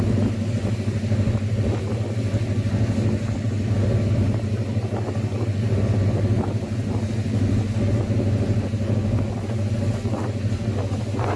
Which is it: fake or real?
real